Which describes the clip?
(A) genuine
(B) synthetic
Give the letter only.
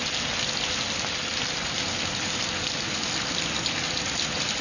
A